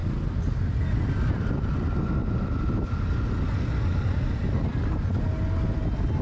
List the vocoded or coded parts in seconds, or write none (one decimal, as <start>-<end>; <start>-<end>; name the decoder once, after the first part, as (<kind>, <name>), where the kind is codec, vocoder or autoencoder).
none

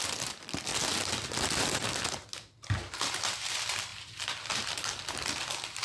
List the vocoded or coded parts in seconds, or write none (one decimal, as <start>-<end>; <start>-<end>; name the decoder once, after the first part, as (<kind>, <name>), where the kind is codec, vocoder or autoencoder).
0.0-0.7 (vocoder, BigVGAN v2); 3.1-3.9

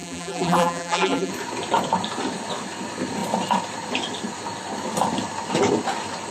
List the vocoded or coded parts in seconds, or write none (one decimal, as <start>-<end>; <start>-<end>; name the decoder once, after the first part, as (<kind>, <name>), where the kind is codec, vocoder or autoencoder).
0.0-1.3 (vocoder, BigVGAN v2)